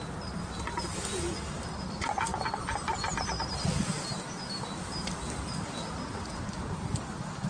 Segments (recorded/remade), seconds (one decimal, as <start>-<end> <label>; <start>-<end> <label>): 0.0-7.5 recorded

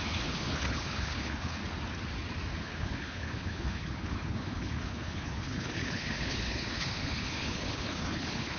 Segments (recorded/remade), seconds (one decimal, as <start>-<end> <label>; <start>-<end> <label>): 0.0-1.6 remade; 1.6-2.6 recorded; 2.6-8.6 remade

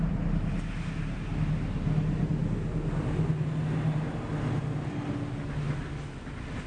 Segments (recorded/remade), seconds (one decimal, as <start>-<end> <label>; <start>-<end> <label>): 0.0-6.7 recorded

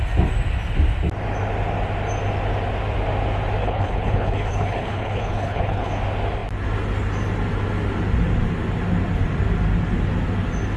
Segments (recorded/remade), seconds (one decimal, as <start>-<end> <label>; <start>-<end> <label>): 0.0-3.6 recorded; 3.6-5.9 remade; 5.9-10.8 recorded

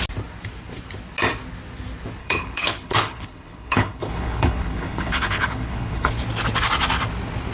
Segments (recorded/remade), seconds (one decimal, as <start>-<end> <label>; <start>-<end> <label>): 0.0-2.2 recorded; 2.2-6.1 remade; 6.1-7.5 recorded